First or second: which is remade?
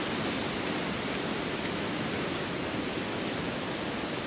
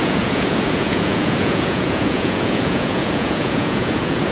second